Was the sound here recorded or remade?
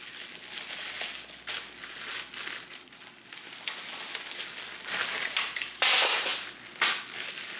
recorded